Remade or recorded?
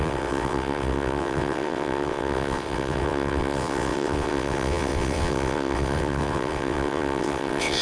remade